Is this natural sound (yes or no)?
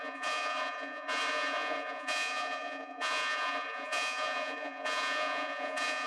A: no